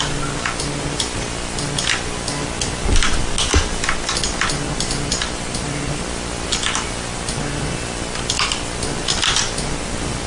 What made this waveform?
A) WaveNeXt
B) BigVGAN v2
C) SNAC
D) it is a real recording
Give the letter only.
D